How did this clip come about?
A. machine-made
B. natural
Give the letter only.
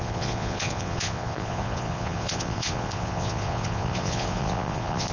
A